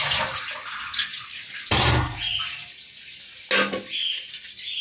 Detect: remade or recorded recorded